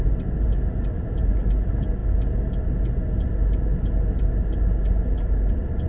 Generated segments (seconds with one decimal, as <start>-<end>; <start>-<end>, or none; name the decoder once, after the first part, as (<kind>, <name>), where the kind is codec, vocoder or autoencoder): none